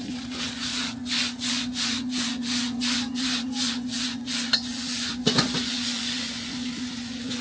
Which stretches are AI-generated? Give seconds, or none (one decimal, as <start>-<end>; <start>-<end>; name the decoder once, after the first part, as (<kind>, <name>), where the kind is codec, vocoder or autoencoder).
0.0-7.4 (vocoder, Vocos)